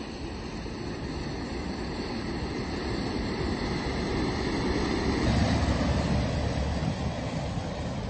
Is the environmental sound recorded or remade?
recorded